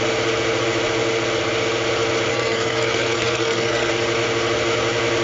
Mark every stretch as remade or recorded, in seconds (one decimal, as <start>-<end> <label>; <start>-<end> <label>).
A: 0.0-2.3 recorded; 2.3-3.9 remade; 3.9-5.2 recorded